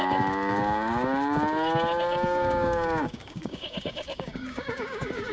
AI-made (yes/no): yes